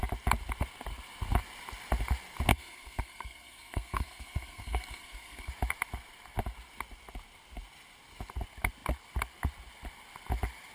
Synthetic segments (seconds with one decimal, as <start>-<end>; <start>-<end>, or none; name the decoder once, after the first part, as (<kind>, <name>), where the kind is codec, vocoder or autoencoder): 2.5-5.5 (codec, SNAC)